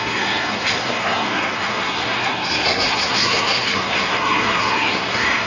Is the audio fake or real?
fake